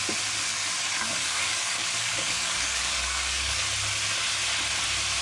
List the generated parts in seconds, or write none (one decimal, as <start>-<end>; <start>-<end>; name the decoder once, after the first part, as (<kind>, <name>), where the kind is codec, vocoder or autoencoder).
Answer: 0.5-3.6 (codec, DAC)